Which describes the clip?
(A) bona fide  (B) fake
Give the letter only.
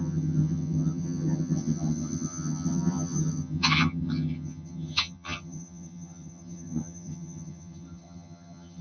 B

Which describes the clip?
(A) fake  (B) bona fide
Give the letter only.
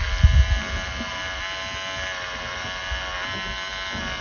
B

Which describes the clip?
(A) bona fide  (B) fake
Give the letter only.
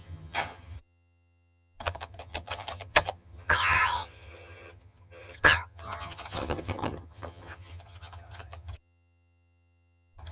B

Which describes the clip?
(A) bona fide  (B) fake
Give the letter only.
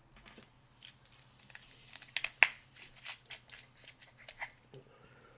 A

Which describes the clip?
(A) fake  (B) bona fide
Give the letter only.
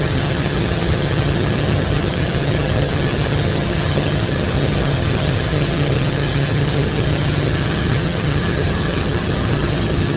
A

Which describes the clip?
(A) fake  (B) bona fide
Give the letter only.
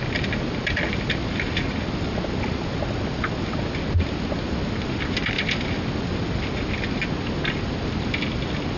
B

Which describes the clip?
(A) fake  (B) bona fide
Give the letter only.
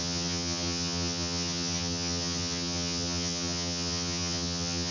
A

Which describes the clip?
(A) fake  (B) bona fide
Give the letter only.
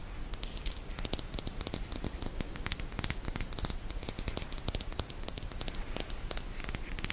B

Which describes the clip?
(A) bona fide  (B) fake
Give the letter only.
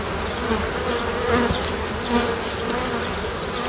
A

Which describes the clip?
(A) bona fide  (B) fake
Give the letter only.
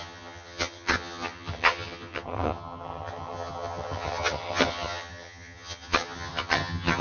B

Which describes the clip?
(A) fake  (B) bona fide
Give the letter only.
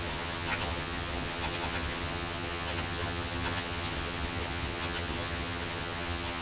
A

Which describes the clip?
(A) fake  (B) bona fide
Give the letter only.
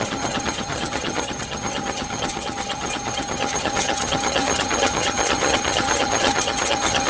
A